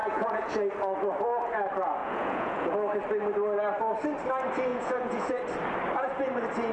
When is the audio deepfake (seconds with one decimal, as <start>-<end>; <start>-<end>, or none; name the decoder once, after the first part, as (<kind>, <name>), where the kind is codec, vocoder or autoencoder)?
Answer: 0.0-0.5 (vocoder, Vocos); 2.0-2.7; 4.7-5.4